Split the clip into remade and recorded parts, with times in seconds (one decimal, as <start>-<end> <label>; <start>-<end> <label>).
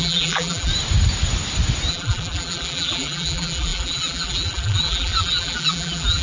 0.0-0.7 remade; 0.7-1.9 recorded; 1.9-6.2 remade